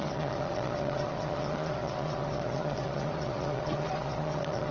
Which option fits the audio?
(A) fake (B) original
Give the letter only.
A